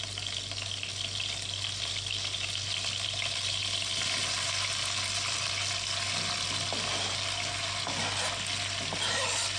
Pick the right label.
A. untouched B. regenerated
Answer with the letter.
A